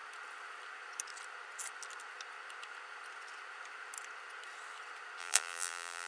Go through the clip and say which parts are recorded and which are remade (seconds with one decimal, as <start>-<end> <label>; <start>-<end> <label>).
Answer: 0.0-5.2 recorded; 5.2-6.1 remade